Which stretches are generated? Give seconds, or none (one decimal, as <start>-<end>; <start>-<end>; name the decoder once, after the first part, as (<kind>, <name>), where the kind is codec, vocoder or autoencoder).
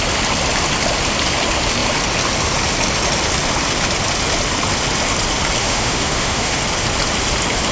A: 5.6-6.6 (autoencoder, DAC-VAE)